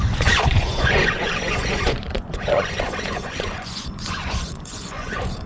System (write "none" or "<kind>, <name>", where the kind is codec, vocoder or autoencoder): vocoder, Vocos